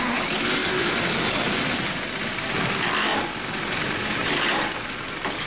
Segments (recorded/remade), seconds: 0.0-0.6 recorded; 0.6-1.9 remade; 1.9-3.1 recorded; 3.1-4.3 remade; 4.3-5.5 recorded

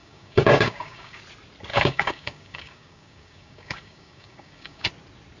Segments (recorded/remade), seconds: 0.0-1.2 remade; 1.2-1.7 recorded; 1.7-4.9 remade; 4.9-5.4 recorded

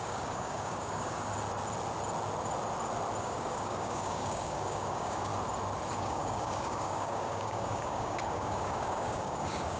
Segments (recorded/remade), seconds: 0.0-1.3 remade; 1.3-3.2 recorded; 3.2-5.3 remade; 5.3-6.0 recorded; 6.0-9.8 remade

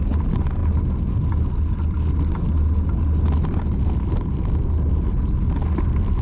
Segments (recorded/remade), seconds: 0.0-6.2 recorded

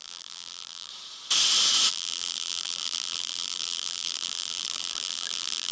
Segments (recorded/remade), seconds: 0.0-0.9 remade; 0.9-1.9 recorded; 1.9-5.7 remade

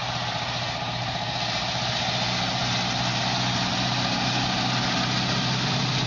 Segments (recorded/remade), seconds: 0.0-6.1 recorded

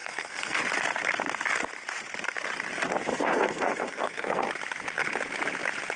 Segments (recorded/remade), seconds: 0.0-0.6 remade; 0.6-3.1 recorded; 3.1-4.5 remade; 4.5-6.0 recorded

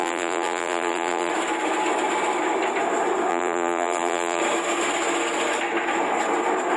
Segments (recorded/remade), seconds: 0.0-1.3 remade; 1.3-3.3 recorded; 3.3-4.4 remade; 4.4-6.8 recorded